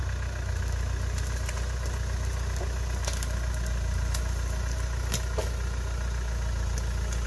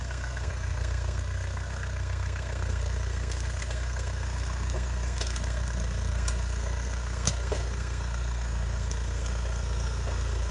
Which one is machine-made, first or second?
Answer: second